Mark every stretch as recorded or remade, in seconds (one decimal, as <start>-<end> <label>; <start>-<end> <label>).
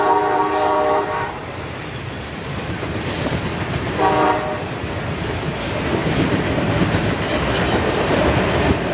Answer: 0.0-7.0 remade; 7.0-7.9 recorded; 7.9-8.9 remade